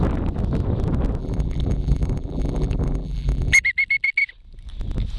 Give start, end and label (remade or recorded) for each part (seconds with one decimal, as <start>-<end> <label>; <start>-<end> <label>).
0.0-1.2 recorded; 1.2-3.6 remade; 3.6-5.2 recorded